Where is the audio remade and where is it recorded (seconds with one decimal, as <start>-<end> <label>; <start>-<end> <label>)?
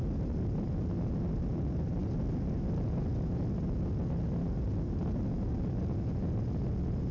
0.0-7.1 recorded